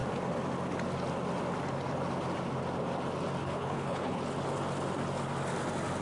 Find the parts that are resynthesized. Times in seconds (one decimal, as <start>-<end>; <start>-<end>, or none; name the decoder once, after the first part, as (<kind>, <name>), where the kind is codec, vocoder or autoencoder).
3.4-4.2 (codec, HILCodec)